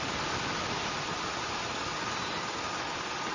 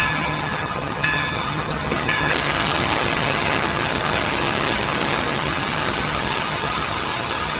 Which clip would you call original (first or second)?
first